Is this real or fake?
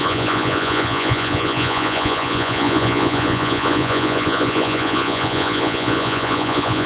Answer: fake